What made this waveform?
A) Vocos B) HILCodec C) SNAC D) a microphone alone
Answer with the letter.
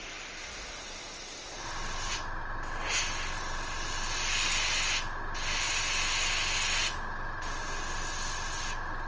D